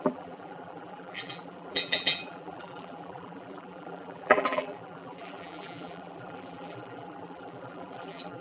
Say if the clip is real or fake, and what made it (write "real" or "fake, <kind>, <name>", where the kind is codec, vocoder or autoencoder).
fake, vocoder, BigVGAN v2